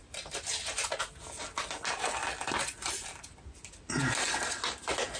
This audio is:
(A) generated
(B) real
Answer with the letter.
B